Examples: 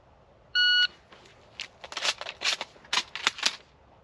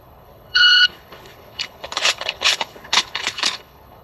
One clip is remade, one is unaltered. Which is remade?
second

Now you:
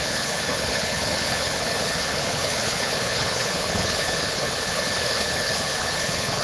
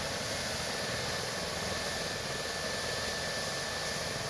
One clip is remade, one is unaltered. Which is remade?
first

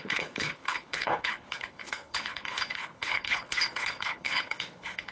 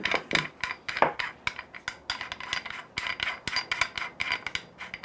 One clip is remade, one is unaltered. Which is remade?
first